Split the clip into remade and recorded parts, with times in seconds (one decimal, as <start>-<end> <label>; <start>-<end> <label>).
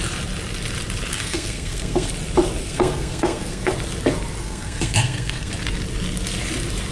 0.0-1.1 recorded; 1.1-2.1 remade; 2.1-2.6 recorded; 2.6-3.7 remade; 3.7-4.4 recorded; 4.4-5.5 remade; 5.5-6.9 recorded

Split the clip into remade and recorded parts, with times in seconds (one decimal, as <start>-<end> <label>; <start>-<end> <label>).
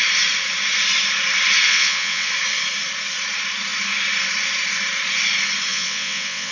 0.0-1.7 recorded; 1.7-2.3 remade; 2.3-5.7 recorded; 5.7-6.5 remade